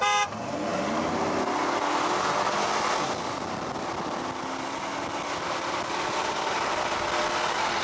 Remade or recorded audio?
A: recorded